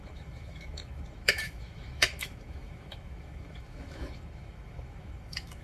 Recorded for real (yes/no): no